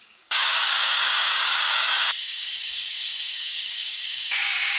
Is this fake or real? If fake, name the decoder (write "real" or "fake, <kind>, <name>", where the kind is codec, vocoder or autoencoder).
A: fake, codec, DAC